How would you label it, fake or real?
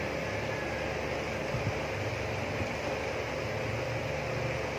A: real